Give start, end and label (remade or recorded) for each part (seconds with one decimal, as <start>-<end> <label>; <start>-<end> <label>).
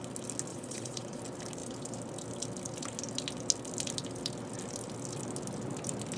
0.0-0.5 recorded; 0.5-1.2 remade; 1.2-6.2 recorded